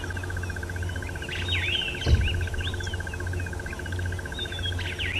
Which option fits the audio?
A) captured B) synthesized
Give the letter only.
A